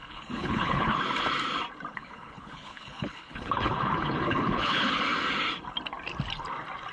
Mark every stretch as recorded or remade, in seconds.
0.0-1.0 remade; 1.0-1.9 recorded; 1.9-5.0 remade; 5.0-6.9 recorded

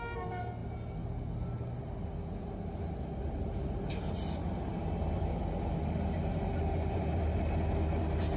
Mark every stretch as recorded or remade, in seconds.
0.0-8.4 recorded

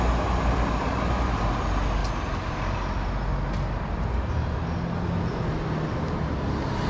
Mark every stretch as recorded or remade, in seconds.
0.0-2.0 recorded; 2.0-2.6 remade; 2.6-6.9 recorded

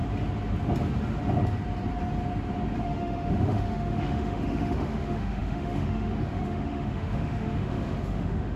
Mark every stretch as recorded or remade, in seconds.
0.0-2.8 recorded; 2.8-8.6 remade

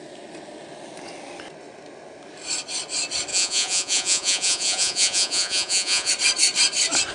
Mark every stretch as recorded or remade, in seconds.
0.0-3.3 recorded; 3.3-6.1 remade; 6.1-7.1 recorded

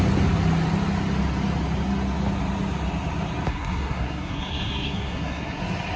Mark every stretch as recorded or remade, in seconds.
0.0-3.5 recorded; 3.5-5.6 remade; 5.6-6.0 recorded